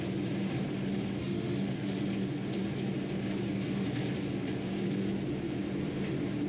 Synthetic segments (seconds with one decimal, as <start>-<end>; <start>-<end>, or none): 1.2-2.0